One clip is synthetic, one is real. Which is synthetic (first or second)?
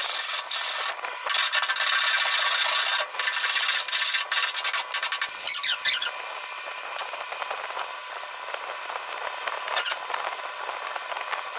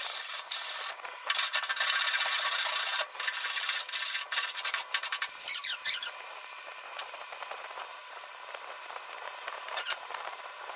second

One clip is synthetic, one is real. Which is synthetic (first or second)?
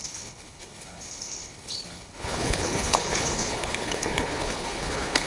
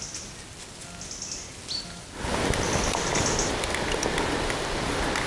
first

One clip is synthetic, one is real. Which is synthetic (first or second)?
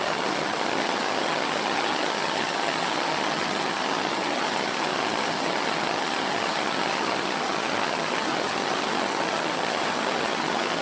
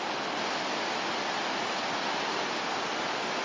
first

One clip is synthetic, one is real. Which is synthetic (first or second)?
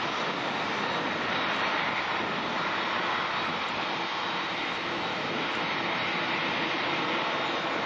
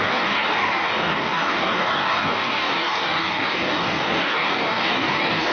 second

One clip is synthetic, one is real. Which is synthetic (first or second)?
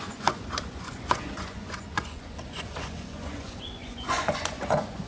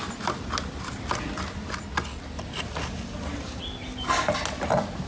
first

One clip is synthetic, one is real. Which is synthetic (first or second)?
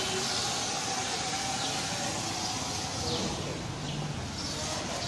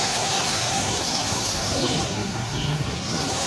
second